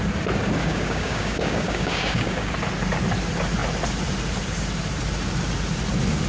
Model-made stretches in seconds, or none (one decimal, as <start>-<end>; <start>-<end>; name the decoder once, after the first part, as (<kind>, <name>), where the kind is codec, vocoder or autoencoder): 0.6-2.5 (codec, DAC)